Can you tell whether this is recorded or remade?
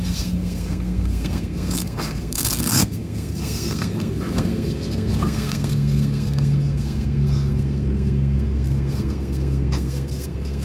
remade